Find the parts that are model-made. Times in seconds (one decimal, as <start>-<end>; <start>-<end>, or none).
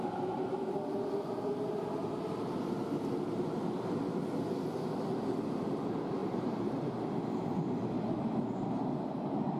6.2-6.9